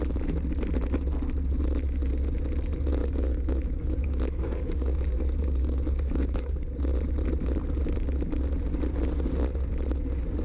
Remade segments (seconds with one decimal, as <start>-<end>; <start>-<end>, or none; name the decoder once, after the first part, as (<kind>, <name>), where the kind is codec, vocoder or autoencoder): 3.0-6.8 (codec, DAC)